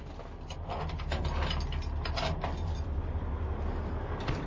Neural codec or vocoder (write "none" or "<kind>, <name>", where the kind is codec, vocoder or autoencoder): none